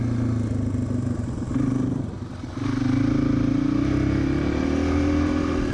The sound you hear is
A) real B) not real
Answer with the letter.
A